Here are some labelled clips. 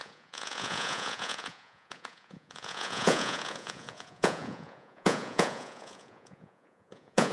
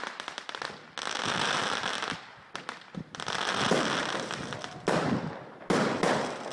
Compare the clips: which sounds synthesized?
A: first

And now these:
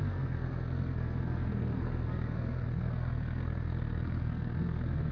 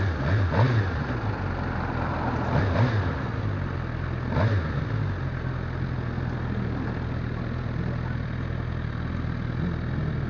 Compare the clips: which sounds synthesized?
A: first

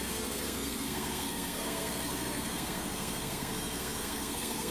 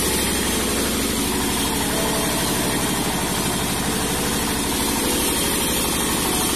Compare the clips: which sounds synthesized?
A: first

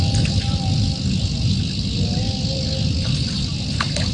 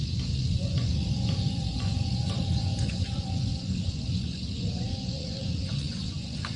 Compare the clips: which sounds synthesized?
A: second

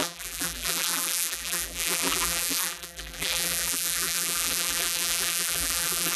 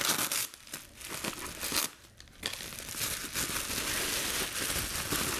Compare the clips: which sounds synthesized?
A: first